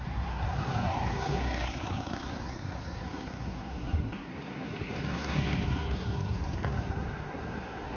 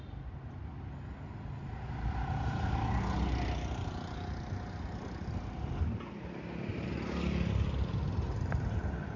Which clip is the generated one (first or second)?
first